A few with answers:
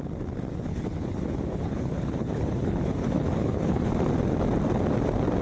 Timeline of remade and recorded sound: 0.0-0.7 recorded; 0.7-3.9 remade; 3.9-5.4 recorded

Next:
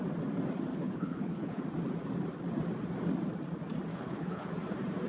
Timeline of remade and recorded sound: 0.0-0.7 recorded; 0.7-1.6 remade; 1.6-3.9 recorded; 3.9-4.5 remade; 4.5-5.1 recorded

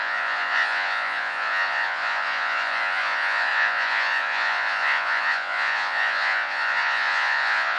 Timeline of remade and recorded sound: 0.0-7.8 remade

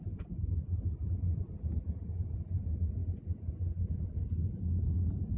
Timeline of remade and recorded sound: 0.0-5.4 recorded

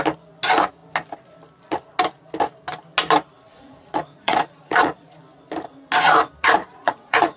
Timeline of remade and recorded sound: 0.0-3.5 recorded; 3.5-5.2 remade; 5.2-6.6 recorded; 6.6-7.4 remade

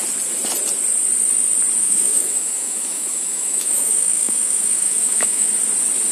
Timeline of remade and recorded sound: 0.0-1.8 recorded; 1.8-5.5 remade; 5.5-6.1 recorded

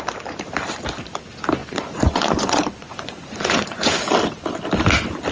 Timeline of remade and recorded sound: 0.0-1.6 recorded; 1.6-4.0 remade; 4.0-5.3 recorded

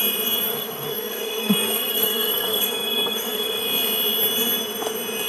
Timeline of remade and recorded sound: 0.0-0.5 recorded; 0.5-3.6 remade; 3.6-5.3 recorded